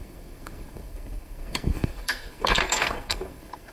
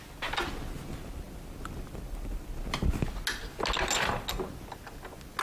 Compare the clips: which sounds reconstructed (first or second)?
first